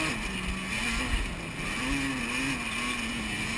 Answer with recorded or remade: recorded